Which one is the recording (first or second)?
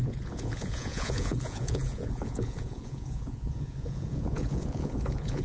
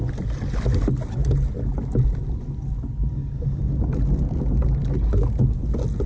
second